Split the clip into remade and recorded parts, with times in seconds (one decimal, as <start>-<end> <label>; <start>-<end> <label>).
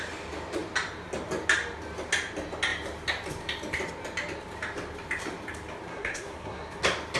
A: 0.0-5.9 recorded; 5.9-6.8 remade; 6.8-7.2 recorded